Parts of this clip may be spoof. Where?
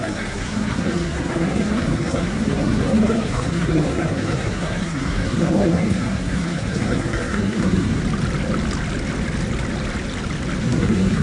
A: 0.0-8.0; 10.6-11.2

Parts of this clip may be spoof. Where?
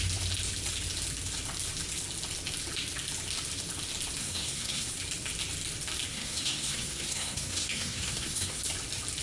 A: 4.2-4.9; 6.1-8.6